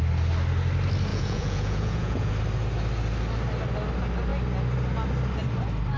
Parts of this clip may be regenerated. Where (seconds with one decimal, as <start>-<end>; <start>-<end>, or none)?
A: 1.1-2.3